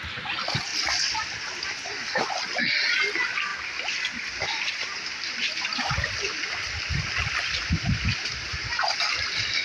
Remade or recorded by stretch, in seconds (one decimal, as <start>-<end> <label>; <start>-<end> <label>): 0.0-9.6 recorded